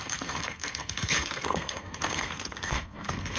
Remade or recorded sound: remade